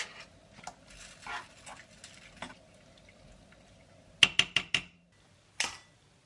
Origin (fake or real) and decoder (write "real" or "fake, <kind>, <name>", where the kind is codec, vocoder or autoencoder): real